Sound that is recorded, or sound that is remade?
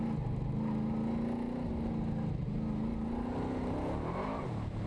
recorded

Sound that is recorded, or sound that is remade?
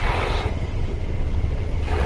remade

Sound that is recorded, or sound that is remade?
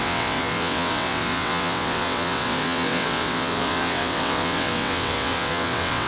remade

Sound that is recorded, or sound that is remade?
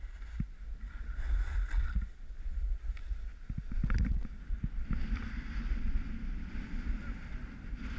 recorded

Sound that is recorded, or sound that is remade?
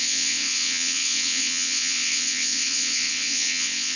remade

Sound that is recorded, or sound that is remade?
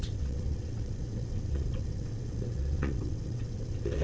remade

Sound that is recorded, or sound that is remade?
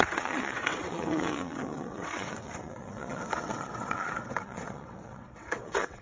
remade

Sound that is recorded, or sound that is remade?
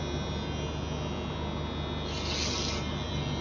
recorded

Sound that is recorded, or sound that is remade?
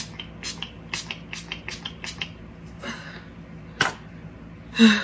recorded